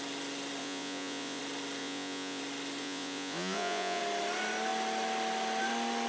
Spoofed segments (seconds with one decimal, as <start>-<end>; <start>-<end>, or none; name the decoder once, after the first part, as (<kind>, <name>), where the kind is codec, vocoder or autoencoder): 0.6-1.4 (vocoder, Vocos); 1.8-2.4; 2.8-4.0

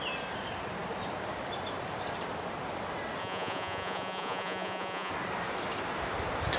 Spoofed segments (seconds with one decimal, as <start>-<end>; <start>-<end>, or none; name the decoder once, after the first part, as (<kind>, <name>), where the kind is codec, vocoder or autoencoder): 3.2-5.1 (vocoder, Vocos)

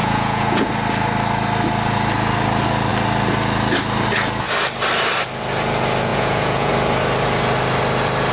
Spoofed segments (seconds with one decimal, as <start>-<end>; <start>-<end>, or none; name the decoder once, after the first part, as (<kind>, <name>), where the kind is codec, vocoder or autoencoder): 0.0-0.7 (vocoder, Vocos); 6.1-6.7